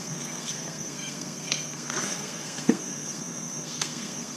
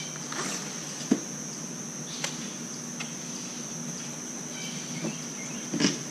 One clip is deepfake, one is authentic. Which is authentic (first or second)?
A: second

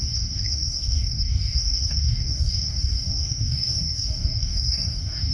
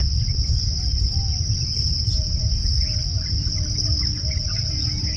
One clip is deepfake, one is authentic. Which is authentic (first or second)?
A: second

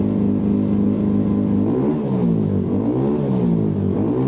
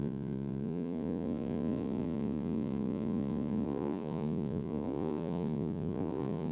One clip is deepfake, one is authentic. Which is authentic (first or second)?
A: first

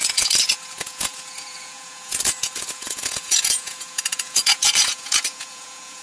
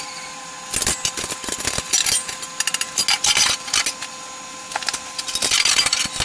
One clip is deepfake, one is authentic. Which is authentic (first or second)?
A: second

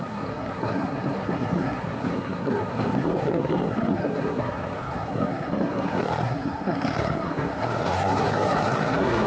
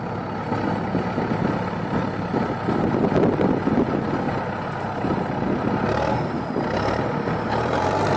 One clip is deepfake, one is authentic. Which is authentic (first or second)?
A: second